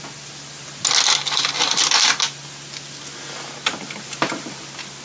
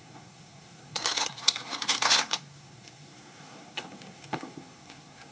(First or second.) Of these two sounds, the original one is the first